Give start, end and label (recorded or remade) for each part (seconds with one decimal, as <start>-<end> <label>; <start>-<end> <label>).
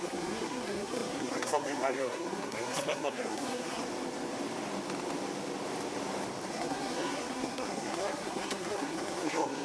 0.0-3.8 remade; 3.8-6.5 recorded; 6.5-9.6 remade